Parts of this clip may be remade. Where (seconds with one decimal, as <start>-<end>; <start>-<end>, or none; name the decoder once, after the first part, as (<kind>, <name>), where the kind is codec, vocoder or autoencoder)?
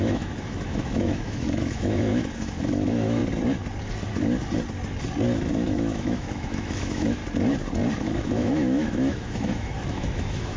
0.0-3.2 (autoencoder, DAC-VAE); 5.5-7.2; 8.0-10.6